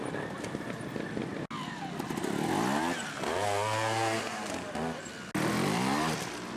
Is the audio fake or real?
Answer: real